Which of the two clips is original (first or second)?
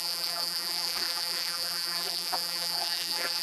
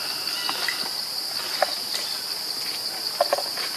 second